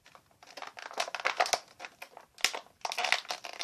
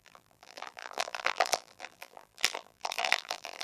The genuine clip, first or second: first